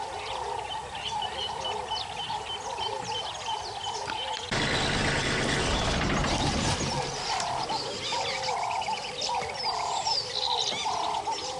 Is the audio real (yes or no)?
yes